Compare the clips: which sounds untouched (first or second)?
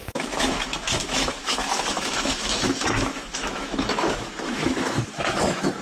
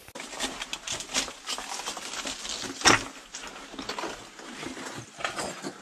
second